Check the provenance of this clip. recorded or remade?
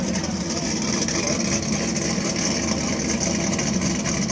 recorded